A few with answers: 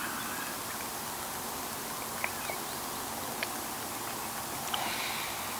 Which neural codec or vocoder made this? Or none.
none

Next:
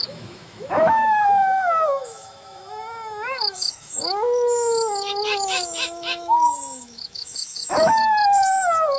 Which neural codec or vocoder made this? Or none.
autoencoder, DAC-VAE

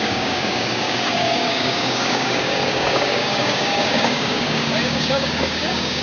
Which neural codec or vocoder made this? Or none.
codec, DAC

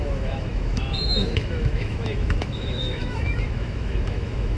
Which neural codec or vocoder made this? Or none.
autoencoder, DAC-VAE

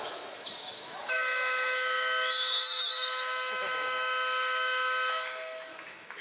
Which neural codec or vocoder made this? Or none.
autoencoder, DAC-VAE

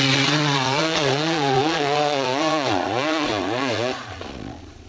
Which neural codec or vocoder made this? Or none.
vocoder, Vocos